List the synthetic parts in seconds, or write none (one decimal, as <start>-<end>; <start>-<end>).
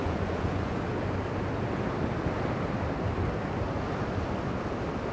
0.0-0.8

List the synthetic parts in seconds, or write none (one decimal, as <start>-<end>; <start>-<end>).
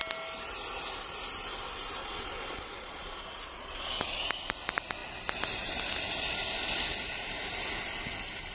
2.0-3.9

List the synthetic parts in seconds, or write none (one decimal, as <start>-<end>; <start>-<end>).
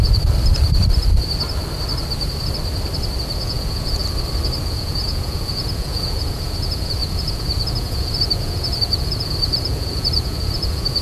3.4-4.0; 4.7-11.0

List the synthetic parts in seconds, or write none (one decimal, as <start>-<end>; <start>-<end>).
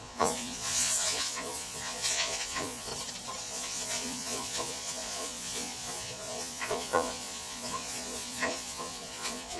0.0-2.9; 3.4-9.6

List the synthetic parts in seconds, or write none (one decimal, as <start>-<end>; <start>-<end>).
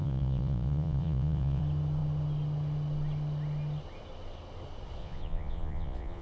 0.0-1.6; 5.0-6.2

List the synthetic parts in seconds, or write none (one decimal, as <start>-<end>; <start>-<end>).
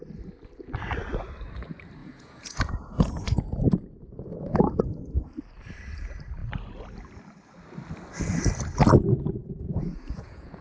2.0-5.0; 9.4-10.6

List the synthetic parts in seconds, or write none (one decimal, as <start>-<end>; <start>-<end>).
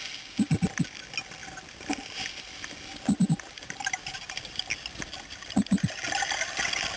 none